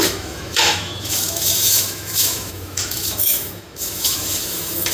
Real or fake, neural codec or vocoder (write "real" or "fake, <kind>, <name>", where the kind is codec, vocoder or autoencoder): fake, autoencoder, DAC-VAE